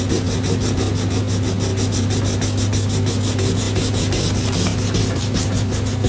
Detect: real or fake real